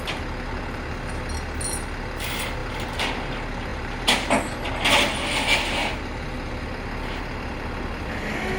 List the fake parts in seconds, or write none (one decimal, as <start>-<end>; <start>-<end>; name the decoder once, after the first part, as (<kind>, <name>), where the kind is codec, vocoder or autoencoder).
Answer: 3.7-4.3 (vocoder, BigVGAN v2)